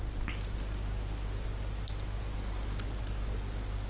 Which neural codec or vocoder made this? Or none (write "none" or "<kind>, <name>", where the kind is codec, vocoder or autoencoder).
none